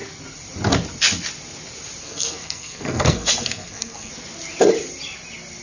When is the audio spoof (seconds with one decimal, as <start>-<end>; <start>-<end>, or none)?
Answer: 2.0-4.1